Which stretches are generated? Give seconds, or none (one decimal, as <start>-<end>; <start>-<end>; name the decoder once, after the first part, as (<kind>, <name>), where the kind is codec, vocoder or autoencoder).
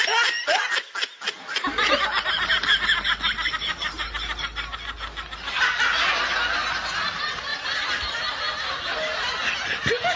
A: none